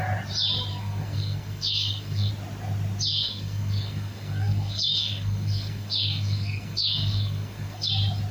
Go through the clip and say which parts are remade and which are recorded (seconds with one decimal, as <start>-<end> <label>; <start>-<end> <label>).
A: 0.0-0.7 recorded; 0.7-2.3 remade; 2.3-3.1 recorded; 3.1-7.9 remade; 7.9-8.3 recorded